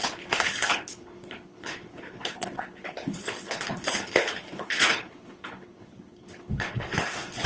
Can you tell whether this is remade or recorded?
remade